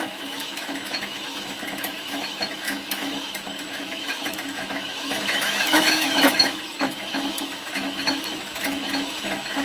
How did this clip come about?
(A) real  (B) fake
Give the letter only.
B